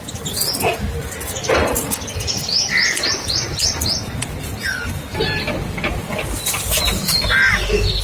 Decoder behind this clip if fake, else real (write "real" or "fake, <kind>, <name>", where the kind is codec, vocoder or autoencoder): real